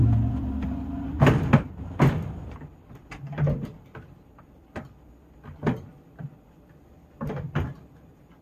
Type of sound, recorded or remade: recorded